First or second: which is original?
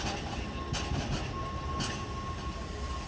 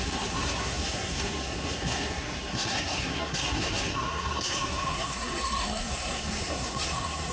first